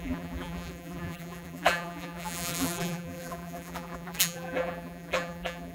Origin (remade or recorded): remade